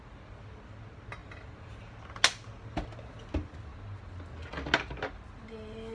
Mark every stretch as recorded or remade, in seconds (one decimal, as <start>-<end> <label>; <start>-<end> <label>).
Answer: 0.0-1.2 recorded; 1.2-1.9 remade; 1.9-5.9 recorded